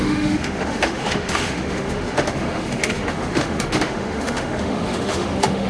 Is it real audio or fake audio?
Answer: fake